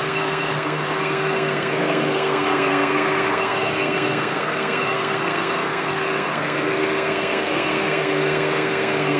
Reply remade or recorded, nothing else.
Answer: remade